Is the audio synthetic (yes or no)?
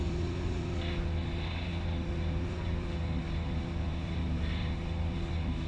no